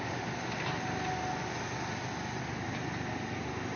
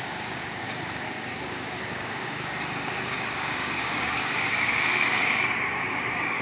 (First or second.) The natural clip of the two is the first